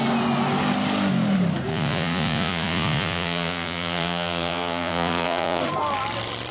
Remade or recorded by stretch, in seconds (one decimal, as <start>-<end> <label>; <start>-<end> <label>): 0.0-1.7 recorded; 1.7-5.6 remade; 5.6-6.5 recorded